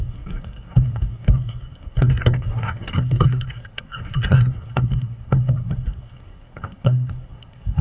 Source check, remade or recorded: remade